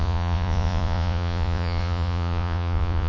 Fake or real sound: fake